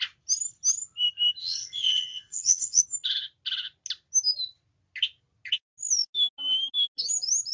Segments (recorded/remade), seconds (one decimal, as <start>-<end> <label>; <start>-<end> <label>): 0.0-1.4 recorded; 1.4-2.8 remade; 2.8-7.5 recorded